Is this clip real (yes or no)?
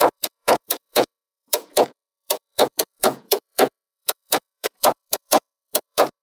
no